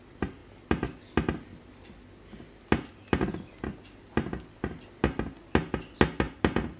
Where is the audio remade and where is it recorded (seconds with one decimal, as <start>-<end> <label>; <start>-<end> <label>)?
0.0-6.8 recorded